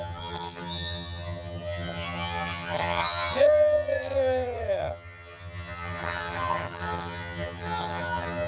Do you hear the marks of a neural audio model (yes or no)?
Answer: yes